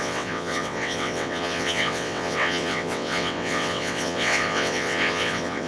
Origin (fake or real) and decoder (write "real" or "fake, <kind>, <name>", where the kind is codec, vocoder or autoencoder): fake, vocoder, WaveNeXt